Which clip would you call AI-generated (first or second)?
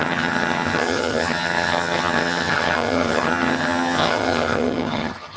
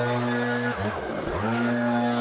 first